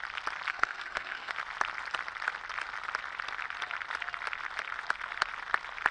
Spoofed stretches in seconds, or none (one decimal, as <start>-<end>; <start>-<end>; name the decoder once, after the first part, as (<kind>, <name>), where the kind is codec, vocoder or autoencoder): 0.5-1.3 (codec, SNAC)